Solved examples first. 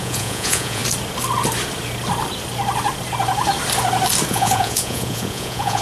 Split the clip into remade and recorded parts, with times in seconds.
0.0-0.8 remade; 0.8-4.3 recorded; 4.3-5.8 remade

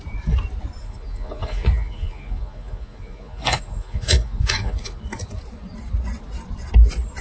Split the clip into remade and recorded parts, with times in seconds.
0.0-0.8 recorded; 0.8-5.0 remade; 5.0-7.2 recorded

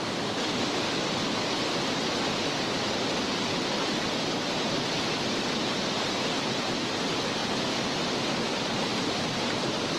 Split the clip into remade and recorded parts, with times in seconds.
0.0-10.0 recorded

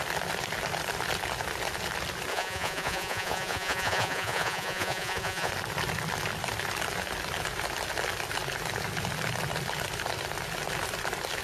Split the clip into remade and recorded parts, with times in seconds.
0.0-2.3 recorded; 2.3-5.5 remade; 5.5-11.4 recorded

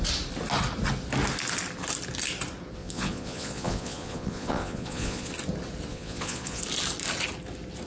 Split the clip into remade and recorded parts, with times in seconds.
0.0-2.8 recorded; 2.8-5.3 remade; 5.3-5.9 recorded; 5.9-6.6 remade; 6.6-7.9 recorded

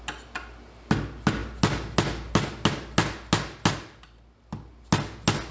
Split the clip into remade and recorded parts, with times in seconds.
0.0-5.5 recorded